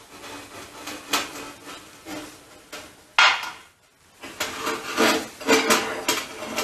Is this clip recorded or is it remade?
recorded